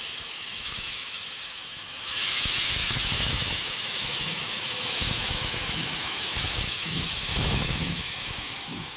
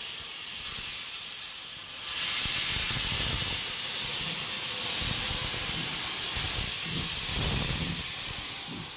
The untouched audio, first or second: second